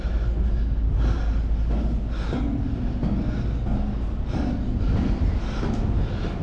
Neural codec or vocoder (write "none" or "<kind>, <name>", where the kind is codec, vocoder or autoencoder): none